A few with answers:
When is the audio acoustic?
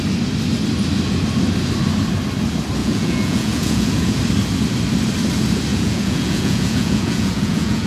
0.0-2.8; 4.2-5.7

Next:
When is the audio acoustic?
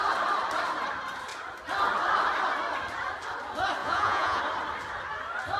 0.0-3.8; 4.4-5.6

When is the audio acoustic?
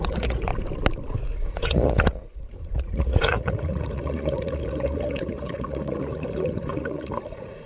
0.5-1.5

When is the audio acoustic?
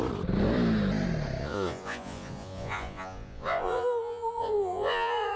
0.0-1.4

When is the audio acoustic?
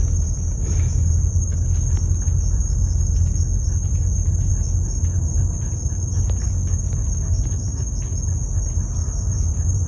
0.0-9.9